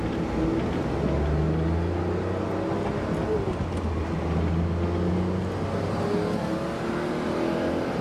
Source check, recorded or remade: recorded